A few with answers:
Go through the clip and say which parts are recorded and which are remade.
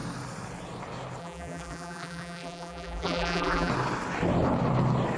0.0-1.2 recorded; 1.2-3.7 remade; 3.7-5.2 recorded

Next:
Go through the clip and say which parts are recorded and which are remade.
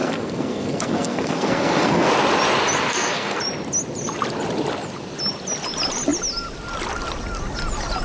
0.0-2.1 remade; 2.1-2.9 recorded; 2.9-3.4 remade; 3.4-8.0 recorded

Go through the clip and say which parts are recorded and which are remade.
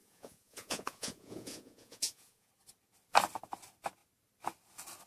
0.0-2.5 remade; 2.5-5.1 recorded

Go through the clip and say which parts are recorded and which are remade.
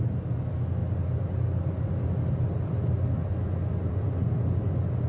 0.0-5.1 recorded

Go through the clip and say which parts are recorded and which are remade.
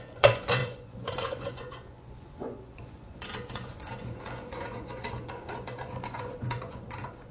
0.0-7.3 remade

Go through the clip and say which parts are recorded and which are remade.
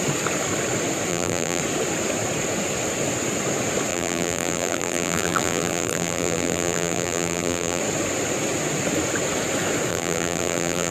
0.0-1.1 recorded; 1.1-1.6 remade; 1.6-3.9 recorded; 3.9-7.8 remade; 7.8-9.9 recorded; 9.9-10.9 remade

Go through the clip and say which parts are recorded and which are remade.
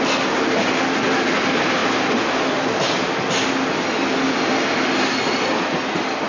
0.0-6.3 recorded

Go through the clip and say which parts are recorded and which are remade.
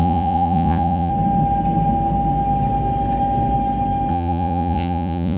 0.0-1.1 remade; 1.1-4.1 recorded; 4.1-5.4 remade